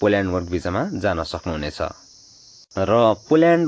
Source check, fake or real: real